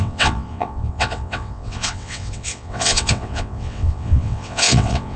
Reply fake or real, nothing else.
fake